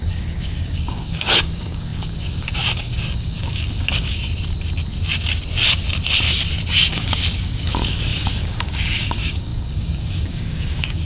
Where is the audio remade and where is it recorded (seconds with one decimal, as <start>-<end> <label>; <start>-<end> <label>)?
0.0-4.2 remade; 4.2-6.9 recorded; 6.9-11.0 remade